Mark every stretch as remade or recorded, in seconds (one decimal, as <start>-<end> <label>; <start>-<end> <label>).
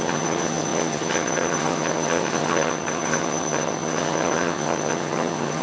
0.0-5.6 remade